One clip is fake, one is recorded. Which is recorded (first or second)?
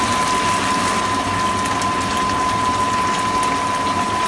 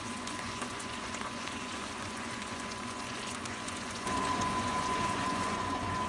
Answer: first